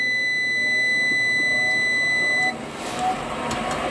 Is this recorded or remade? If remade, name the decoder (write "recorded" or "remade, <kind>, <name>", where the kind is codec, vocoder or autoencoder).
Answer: recorded